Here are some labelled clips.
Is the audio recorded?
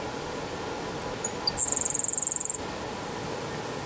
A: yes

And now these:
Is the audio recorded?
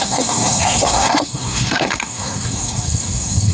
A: no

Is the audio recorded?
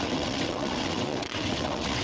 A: no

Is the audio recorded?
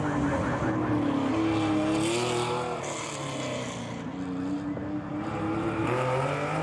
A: yes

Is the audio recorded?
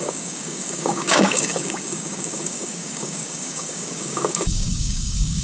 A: no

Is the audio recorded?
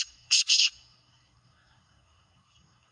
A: no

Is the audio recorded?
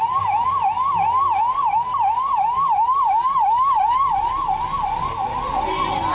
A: yes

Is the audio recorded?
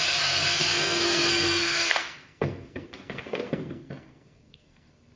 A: no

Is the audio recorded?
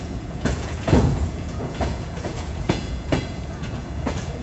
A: no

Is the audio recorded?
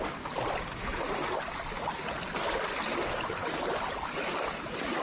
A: yes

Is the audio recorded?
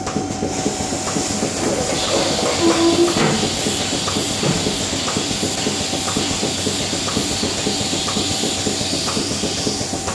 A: yes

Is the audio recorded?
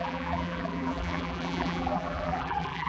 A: no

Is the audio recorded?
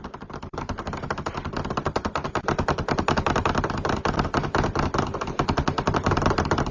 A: yes